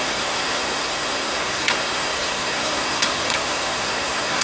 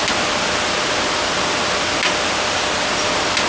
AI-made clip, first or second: first